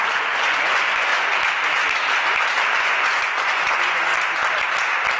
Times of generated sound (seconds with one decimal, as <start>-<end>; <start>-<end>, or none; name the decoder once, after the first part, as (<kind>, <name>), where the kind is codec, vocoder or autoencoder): 0.0-1.1 (vocoder, Vocos); 2.8-4.1